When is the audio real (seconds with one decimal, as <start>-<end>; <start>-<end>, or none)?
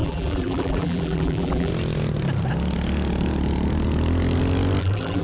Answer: 1.7-4.8